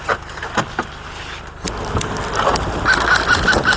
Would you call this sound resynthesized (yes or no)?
no